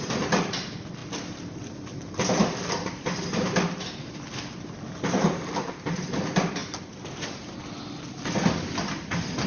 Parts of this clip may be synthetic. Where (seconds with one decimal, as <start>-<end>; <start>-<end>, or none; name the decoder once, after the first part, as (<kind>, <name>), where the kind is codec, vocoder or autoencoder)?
0.0-9.5 (vocoder, BigVGAN v2)

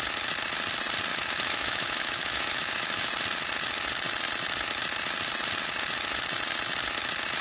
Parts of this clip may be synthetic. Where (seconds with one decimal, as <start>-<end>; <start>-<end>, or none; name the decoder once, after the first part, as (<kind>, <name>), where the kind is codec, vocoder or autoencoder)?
1.1-3.1 (autoencoder, DAC-VAE)

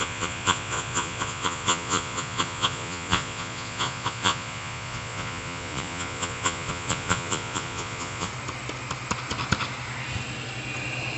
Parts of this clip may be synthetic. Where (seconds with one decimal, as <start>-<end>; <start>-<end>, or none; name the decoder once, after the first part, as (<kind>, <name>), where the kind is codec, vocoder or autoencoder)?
0.0-8.3 (vocoder, Vocos)

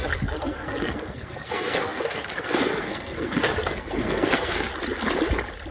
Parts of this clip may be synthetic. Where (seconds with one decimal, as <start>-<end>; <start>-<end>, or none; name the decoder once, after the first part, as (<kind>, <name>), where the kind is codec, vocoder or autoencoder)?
0.0-4.7 (codec, SNAC)

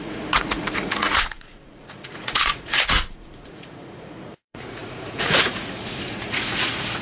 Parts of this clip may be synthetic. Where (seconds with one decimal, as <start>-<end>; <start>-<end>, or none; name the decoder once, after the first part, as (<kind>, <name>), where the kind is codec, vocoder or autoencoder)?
0.0-7.0 (vocoder, Vocos)

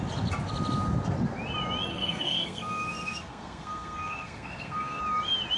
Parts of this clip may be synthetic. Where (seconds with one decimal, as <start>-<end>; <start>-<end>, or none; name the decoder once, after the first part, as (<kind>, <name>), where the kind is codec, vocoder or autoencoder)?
1.9-5.0 (codec, SNAC)

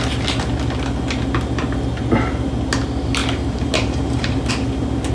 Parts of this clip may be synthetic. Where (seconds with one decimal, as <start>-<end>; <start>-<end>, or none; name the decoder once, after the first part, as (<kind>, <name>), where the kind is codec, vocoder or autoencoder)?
3.2-4.5 (vocoder, BigVGAN v2)